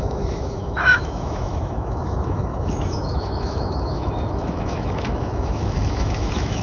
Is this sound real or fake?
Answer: fake